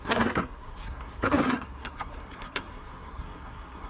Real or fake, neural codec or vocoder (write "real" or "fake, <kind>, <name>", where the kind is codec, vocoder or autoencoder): fake, codec, SNAC